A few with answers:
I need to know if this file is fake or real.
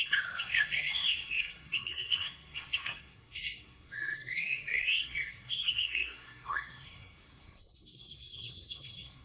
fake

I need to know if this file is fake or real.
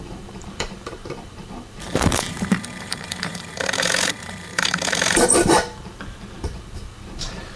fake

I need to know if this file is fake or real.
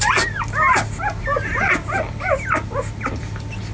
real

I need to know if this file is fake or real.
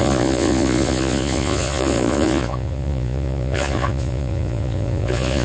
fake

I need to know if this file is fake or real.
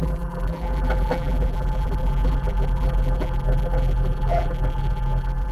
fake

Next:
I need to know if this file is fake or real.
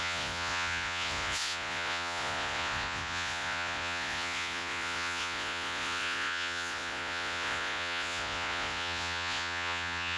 fake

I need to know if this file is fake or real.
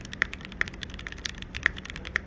fake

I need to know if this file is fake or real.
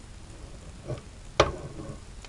real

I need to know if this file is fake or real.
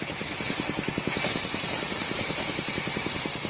real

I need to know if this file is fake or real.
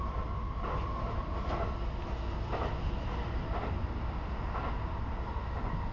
real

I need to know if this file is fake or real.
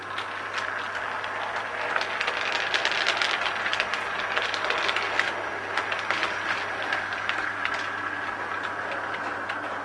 real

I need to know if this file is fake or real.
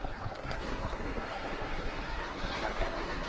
fake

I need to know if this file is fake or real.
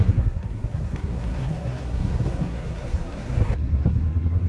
fake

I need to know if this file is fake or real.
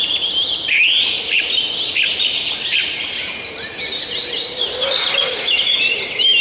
real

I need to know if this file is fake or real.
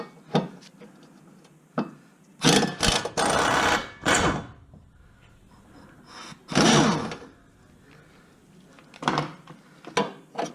real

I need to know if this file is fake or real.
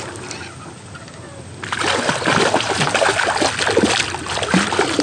real